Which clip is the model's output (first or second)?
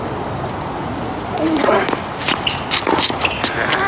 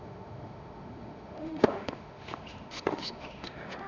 second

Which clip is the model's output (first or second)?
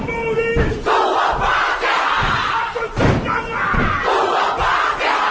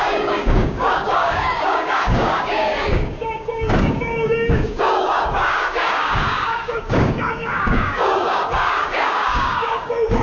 second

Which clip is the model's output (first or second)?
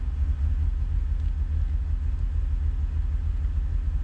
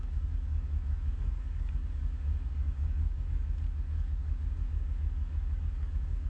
second